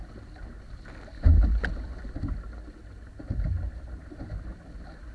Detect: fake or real real